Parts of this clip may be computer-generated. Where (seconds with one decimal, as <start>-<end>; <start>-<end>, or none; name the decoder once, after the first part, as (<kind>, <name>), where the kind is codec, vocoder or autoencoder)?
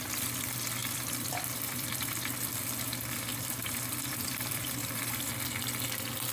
0.8-2.5 (vocoder, BigVGAN v2); 3.3-5.3